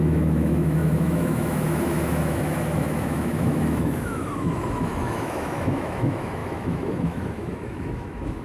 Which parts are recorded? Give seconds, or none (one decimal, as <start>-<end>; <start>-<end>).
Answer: none